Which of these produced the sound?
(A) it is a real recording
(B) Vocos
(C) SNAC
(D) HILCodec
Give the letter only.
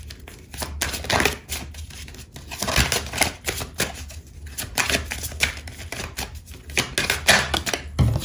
A